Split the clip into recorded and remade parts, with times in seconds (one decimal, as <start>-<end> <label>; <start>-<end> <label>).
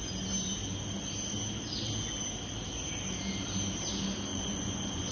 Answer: 0.0-4.3 recorded; 4.3-5.1 remade